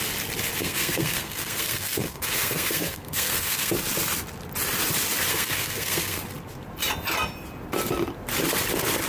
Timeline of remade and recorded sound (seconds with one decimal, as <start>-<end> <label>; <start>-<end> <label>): 0.0-0.6 recorded; 0.6-3.7 remade; 3.7-5.3 recorded; 5.3-6.2 remade; 6.2-9.1 recorded